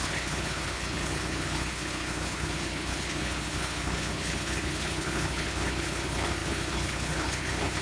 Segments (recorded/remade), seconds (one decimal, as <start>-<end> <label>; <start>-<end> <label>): 0.0-7.8 remade